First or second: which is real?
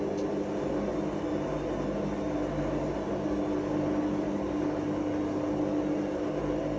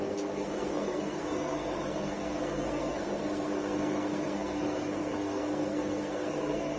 first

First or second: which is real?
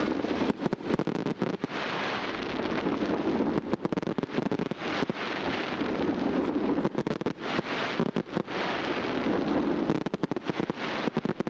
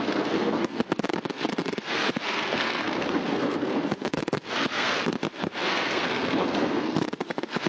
first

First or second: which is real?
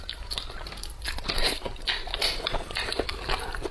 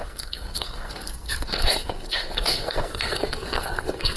first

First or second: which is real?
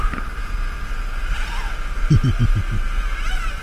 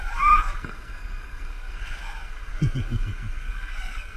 first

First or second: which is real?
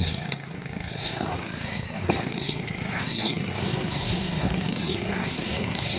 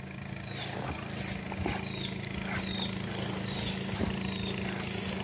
second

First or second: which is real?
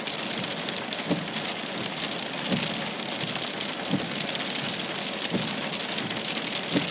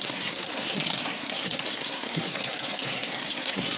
first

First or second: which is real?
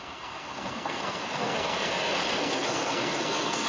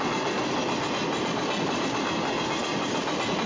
second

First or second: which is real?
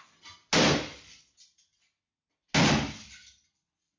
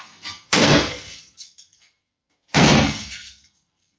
first